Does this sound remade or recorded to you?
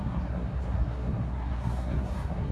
remade